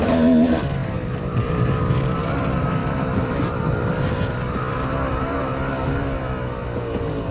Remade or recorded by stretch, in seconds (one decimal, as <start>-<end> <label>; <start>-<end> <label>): 0.0-5.4 remade; 5.4-7.3 recorded